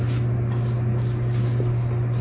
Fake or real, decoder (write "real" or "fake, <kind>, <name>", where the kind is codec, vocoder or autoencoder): real